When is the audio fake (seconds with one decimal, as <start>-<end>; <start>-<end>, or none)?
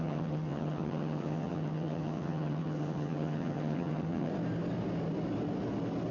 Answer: 0.0-4.3